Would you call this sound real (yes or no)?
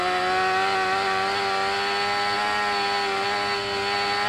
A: yes